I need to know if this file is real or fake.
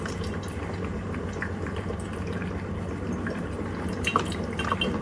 real